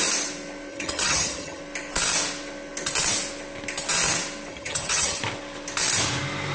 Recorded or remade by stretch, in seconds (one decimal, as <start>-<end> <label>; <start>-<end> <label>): 0.0-0.7 recorded; 0.7-1.6 remade; 1.6-4.5 recorded; 4.5-5.2 remade; 5.2-6.5 recorded